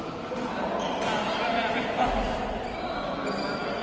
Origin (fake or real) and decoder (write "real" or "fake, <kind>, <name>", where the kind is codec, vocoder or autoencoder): real